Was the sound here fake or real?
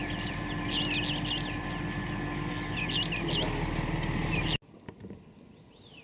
real